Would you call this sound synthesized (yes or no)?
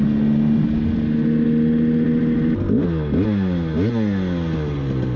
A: no